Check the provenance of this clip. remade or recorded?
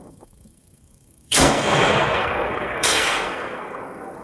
remade